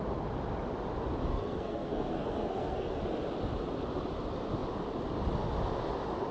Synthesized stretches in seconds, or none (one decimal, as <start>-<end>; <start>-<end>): 1.3-3.0